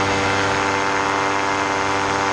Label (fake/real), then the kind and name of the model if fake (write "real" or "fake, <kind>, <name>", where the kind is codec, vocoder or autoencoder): real